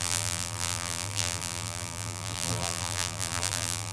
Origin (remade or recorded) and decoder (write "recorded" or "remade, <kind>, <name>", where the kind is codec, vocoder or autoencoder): remade, vocoder, BigVGAN v2